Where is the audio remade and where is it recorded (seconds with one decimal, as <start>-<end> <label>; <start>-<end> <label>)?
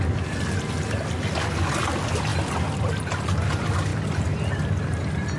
0.0-5.4 recorded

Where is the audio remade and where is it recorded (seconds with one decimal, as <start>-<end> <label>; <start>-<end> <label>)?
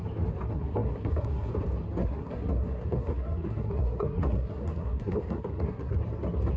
0.0-0.5 recorded; 0.5-1.5 remade; 1.5-2.0 recorded; 2.0-6.0 remade; 6.0-6.6 recorded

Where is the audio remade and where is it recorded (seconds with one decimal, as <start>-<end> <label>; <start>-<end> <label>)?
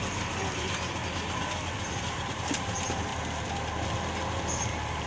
0.0-1.0 remade; 1.0-1.9 recorded; 1.9-3.1 remade; 3.1-4.3 recorded; 4.3-5.1 remade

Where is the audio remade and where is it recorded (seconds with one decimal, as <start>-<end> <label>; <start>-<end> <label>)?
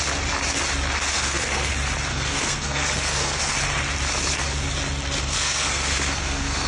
0.0-1.1 recorded; 1.1-1.7 remade; 1.7-2.1 recorded; 2.1-3.4 remade; 3.4-5.2 recorded; 5.2-6.7 remade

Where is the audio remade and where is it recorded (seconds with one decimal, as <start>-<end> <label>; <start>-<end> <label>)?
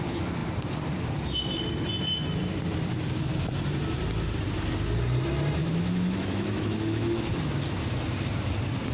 0.0-5.6 recorded; 5.6-7.3 remade; 7.3-8.9 recorded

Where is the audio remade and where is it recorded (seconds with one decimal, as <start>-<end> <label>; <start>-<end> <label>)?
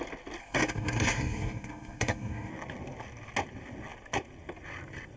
0.0-0.4 recorded; 0.4-2.5 remade; 2.5-5.2 recorded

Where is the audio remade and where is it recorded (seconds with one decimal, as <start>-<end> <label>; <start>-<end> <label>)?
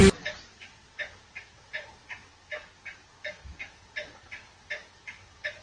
0.0-0.5 recorded; 0.5-2.3 remade; 2.3-3.7 recorded; 3.7-5.6 remade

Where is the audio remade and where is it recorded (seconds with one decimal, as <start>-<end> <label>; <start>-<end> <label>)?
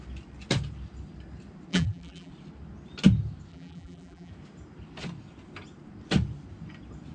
0.0-1.7 recorded; 1.7-2.3 remade; 2.3-3.5 recorded; 3.5-4.3 remade; 4.3-7.1 recorded